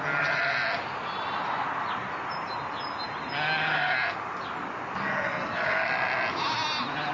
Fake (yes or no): no